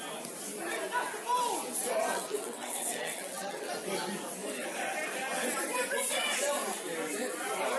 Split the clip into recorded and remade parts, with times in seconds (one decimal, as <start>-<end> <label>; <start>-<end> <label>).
0.0-2.1 recorded; 2.1-3.7 remade; 3.7-7.8 recorded

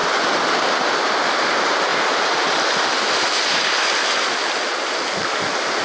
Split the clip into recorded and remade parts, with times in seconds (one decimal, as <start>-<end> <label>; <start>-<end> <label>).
0.0-5.8 recorded

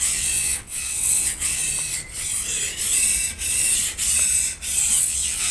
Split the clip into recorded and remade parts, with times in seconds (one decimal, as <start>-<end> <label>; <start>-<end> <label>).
0.0-1.6 remade; 1.6-4.9 recorded; 4.9-5.5 remade

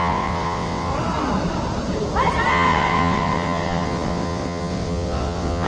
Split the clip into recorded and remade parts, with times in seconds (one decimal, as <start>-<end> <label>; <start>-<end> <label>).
0.0-0.9 remade; 0.9-2.5 recorded; 2.5-5.7 remade

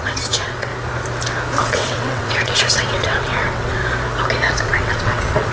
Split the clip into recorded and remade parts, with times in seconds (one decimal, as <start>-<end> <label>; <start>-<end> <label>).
0.0-0.7 remade; 0.7-1.6 recorded; 1.6-3.8 remade; 3.8-4.6 recorded; 4.6-5.5 remade

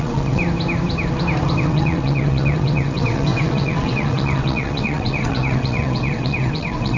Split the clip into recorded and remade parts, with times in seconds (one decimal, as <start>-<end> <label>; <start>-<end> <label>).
0.0-0.4 remade; 0.4-1.6 recorded; 1.6-7.0 remade

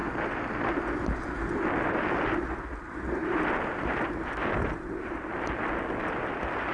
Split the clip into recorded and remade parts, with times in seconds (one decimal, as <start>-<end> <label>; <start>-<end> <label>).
0.0-6.7 recorded